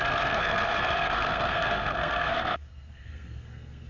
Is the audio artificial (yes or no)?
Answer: yes